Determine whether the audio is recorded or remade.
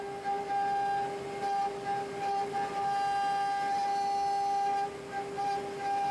recorded